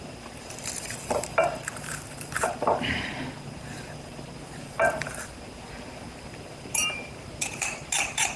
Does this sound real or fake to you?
fake